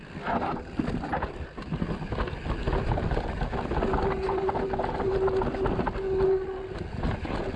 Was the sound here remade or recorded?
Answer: recorded